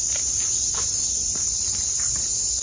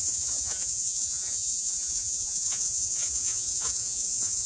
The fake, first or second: second